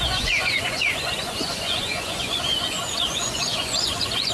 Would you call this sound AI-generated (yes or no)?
yes